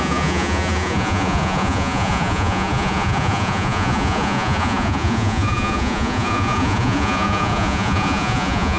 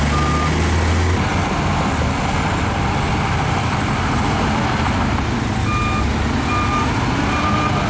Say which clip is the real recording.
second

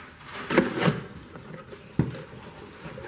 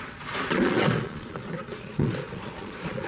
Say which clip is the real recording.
first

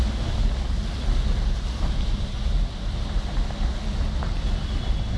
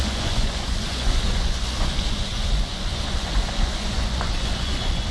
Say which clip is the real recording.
first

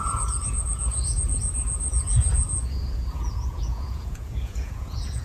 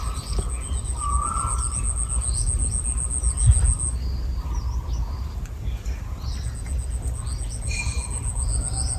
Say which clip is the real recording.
second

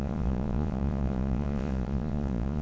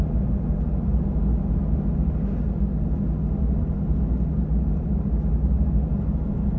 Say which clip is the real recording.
second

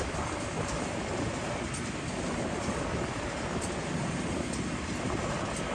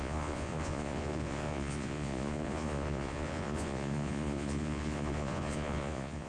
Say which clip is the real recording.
first